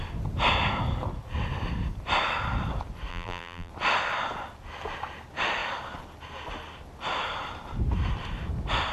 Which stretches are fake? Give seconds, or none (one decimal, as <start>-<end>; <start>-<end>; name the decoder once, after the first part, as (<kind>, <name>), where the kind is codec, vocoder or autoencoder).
3.1-3.7 (vocoder, BigVGAN v2)